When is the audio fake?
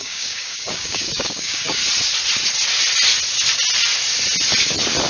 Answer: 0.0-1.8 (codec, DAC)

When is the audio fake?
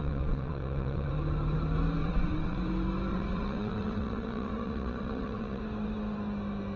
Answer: 0.0-1.1 (vocoder, WaveNeXt); 2.0-2.6; 3.1-5.6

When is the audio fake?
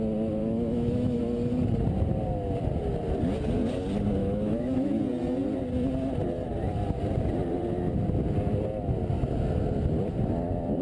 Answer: 0.4-1.2 (autoencoder, DAC-VAE); 4.2-5.0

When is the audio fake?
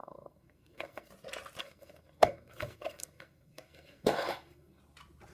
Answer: 0.0-1.1 (codec, SNAC); 1.6-4.8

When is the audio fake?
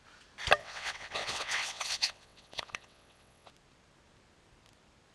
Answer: 0.6-3.5 (vocoder, WaveNeXt)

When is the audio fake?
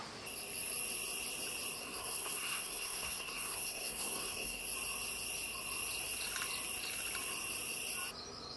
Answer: 1.8-4.6 (codec, SNAC)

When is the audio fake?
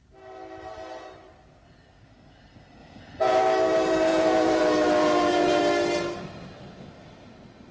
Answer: 2.8-3.4 (vocoder, Vocos); 4.1-4.6; 5.0-5.6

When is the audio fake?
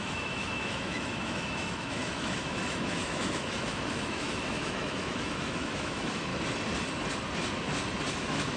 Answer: 0.0-6.3 (autoencoder, DAC-VAE); 8.1-8.6